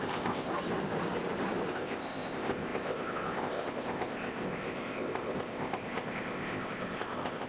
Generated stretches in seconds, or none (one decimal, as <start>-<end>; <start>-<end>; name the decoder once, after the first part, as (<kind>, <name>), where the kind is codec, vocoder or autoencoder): 0.0-0.5 (codec, ZipCodec); 1.7-7.5